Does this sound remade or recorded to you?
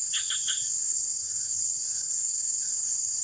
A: remade